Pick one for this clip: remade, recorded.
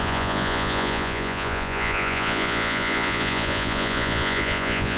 remade